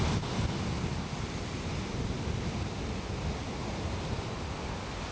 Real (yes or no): yes